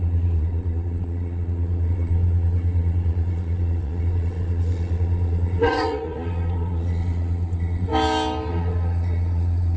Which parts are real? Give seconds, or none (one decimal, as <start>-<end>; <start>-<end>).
7.9-8.5

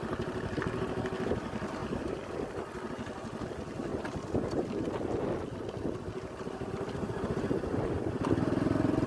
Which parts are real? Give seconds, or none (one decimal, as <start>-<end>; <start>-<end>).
0.0-9.1

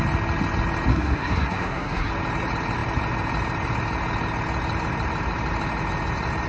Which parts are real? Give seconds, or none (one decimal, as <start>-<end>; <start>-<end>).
0.0-0.9; 2.1-6.5

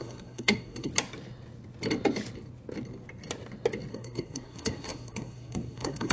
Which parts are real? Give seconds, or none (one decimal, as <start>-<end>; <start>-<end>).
0.9-3.9

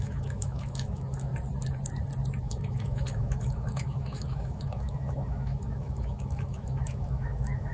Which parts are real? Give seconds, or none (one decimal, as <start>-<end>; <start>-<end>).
1.3-2.4

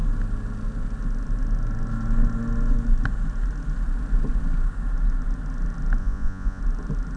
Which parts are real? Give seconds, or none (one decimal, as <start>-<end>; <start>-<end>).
0.0-6.0; 6.6-7.2